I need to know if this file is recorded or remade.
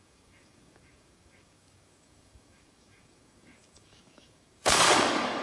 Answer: remade